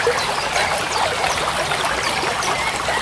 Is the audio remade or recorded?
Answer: recorded